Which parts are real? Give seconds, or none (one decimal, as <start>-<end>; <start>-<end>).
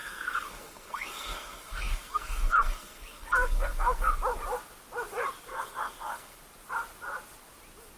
4.2-5.5; 6.4-8.0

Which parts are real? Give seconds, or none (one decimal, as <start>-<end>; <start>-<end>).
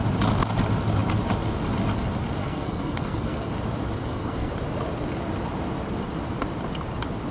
0.0-2.4; 3.5-4.0; 4.5-7.3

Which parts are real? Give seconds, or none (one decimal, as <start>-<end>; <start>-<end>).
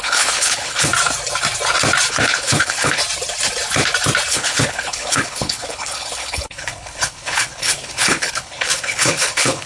0.9-2.1; 3.0-4.3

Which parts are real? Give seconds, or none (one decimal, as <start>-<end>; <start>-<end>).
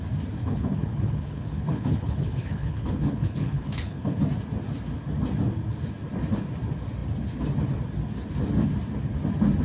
0.0-0.4; 4.2-9.6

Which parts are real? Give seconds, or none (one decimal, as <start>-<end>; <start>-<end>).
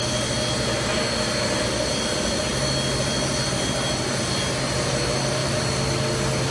0.0-6.5